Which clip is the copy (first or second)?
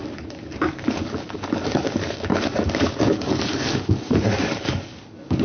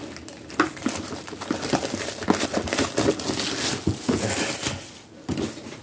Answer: first